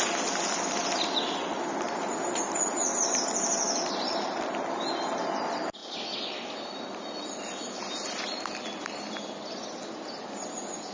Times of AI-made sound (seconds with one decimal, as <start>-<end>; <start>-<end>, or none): none